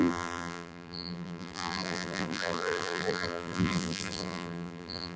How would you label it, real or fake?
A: fake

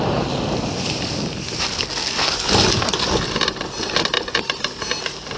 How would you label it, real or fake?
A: real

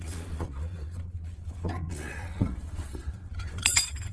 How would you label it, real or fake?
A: fake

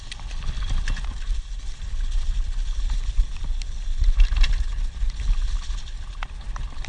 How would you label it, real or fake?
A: real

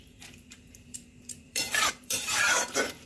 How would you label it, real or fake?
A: fake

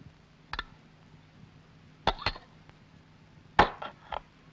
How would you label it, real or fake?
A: real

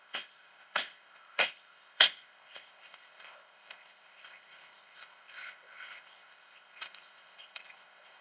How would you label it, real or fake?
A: fake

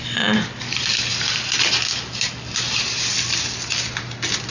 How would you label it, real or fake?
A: real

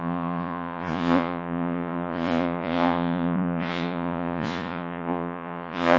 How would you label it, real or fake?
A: fake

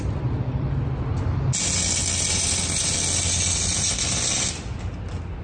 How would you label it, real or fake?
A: real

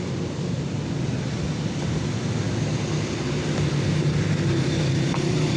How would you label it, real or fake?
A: real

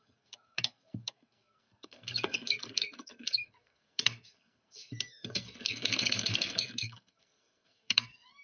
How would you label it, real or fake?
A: fake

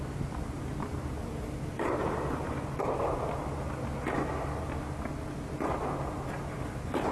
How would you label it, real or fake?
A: real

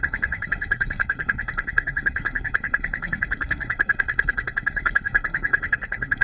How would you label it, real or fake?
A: fake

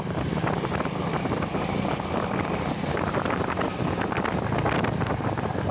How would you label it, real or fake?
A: real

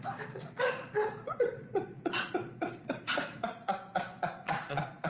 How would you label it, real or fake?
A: fake